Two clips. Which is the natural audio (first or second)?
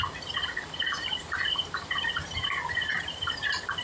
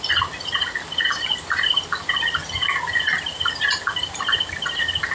second